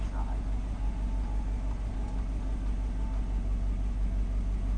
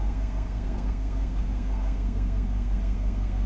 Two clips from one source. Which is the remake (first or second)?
second